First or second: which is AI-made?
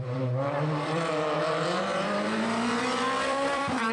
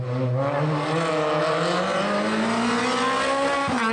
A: first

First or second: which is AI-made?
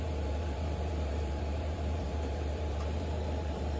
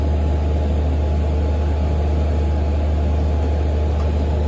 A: first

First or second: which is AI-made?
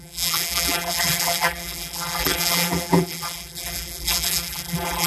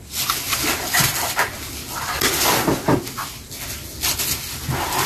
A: first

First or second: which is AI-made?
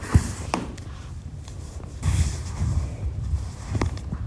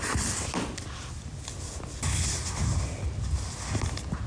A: first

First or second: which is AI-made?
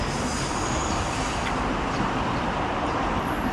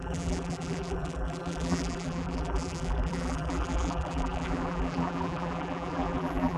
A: second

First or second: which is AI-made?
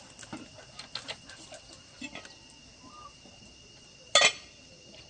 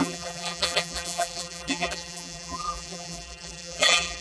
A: second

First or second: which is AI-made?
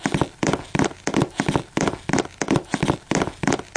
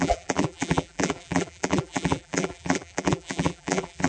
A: second